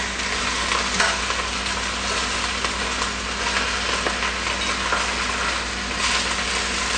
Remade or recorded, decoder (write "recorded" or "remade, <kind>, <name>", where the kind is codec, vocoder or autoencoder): recorded